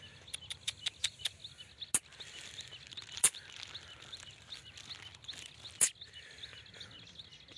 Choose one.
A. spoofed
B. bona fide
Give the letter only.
B